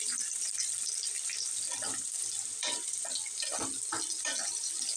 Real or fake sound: fake